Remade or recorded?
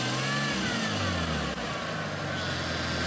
recorded